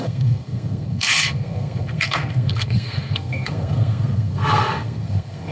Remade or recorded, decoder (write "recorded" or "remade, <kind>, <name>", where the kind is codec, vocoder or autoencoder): remade, codec, SNAC